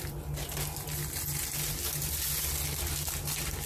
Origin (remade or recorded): recorded